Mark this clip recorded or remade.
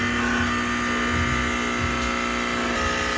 recorded